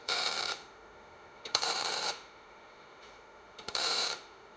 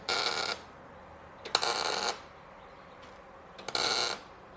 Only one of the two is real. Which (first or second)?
second